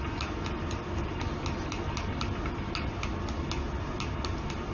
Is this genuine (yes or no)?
yes